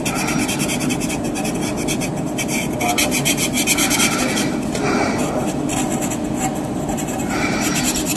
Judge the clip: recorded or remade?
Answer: recorded